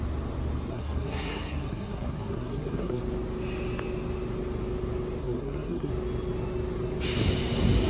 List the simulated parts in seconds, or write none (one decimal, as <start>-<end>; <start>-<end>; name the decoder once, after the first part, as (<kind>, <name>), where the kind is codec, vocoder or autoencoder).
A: 0.7-3.0 (codec, SNAC); 5.2-5.9